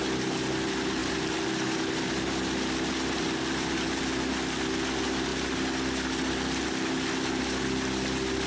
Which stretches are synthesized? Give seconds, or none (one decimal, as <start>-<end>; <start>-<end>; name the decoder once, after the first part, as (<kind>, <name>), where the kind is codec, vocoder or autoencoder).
none